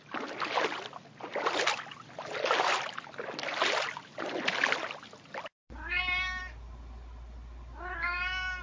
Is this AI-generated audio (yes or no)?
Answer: no